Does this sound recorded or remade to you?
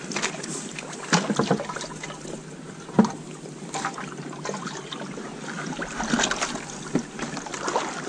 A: recorded